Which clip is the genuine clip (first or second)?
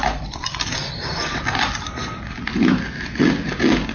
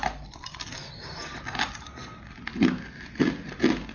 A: second